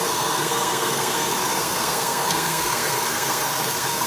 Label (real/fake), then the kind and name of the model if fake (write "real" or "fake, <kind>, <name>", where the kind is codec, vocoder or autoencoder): fake, codec, SNAC